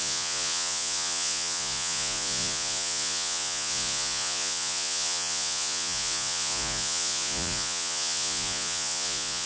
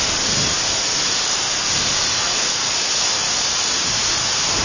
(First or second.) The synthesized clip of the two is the first